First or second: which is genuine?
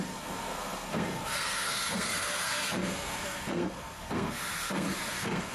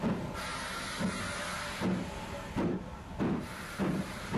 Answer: second